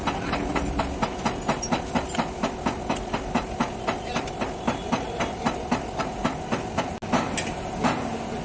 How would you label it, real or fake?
real